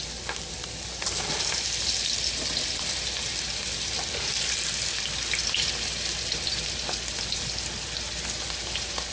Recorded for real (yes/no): yes